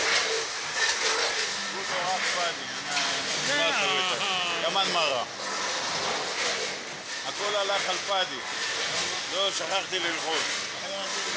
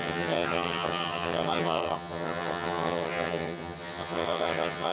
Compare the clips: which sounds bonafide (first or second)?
first